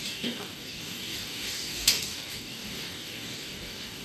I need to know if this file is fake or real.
fake